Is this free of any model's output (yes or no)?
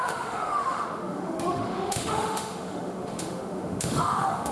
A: no